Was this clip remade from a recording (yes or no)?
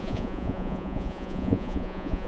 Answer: yes